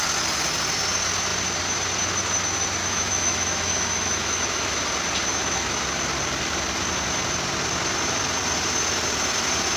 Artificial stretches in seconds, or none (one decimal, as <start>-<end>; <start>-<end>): 2.8-4.7; 5.3-5.8